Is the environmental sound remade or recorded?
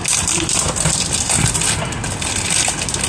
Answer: recorded